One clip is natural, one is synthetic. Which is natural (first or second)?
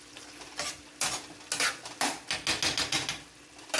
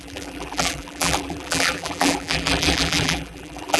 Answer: first